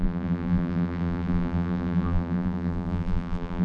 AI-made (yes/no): yes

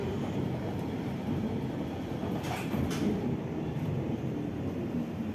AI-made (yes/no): yes